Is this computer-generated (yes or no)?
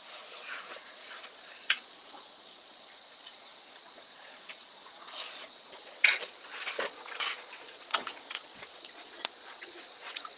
yes